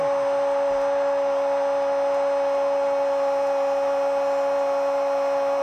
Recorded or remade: recorded